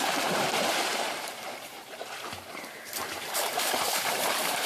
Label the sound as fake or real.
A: fake